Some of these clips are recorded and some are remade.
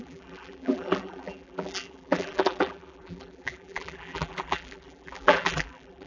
remade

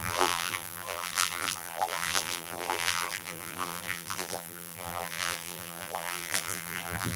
remade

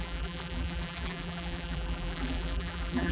remade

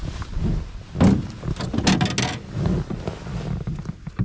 recorded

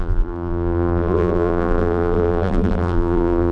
remade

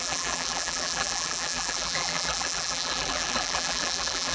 remade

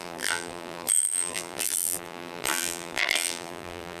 remade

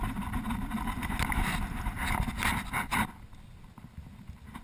recorded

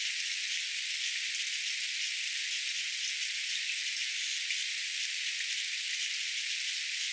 recorded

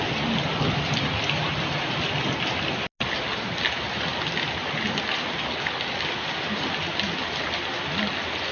recorded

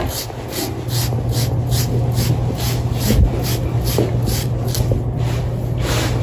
recorded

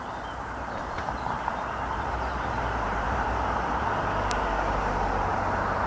remade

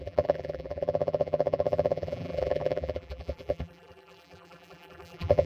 remade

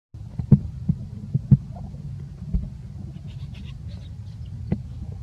recorded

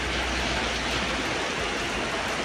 recorded